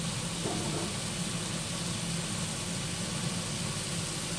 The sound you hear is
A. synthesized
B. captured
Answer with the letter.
B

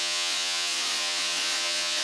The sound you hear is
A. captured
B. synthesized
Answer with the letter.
B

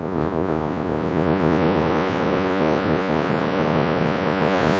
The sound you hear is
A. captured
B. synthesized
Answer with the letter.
B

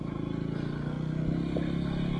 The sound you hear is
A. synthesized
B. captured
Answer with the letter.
B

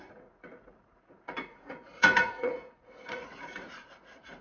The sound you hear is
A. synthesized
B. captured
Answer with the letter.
A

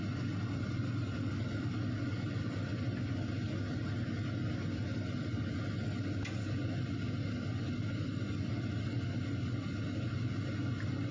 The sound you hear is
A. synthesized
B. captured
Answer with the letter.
B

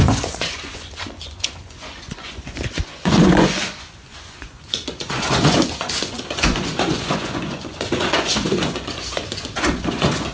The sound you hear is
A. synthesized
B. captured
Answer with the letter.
A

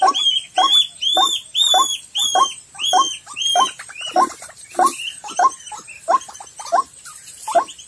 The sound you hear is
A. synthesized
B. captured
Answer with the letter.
B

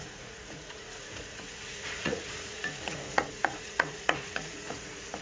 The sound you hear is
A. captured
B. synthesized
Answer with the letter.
B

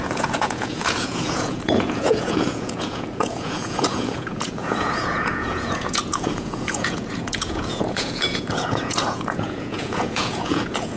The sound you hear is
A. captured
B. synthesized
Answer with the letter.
B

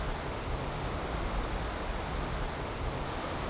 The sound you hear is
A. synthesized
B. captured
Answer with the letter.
B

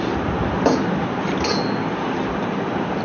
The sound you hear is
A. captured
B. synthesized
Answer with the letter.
A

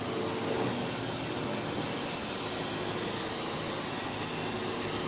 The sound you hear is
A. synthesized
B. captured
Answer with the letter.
B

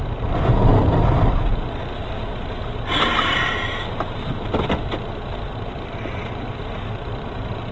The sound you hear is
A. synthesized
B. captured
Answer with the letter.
B